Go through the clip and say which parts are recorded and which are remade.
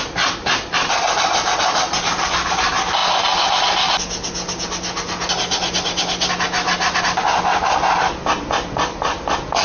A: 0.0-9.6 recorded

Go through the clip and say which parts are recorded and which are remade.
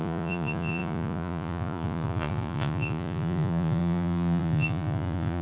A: 0.0-5.4 remade